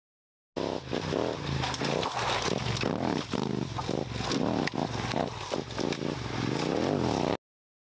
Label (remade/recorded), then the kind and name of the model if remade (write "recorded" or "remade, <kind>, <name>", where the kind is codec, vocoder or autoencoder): recorded